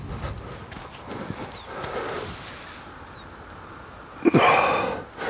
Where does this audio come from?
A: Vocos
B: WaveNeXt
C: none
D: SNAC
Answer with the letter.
C